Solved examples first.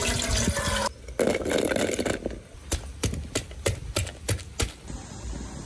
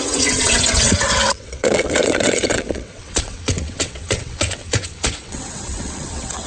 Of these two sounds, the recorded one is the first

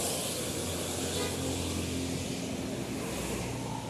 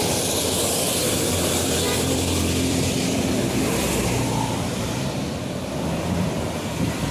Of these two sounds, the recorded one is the first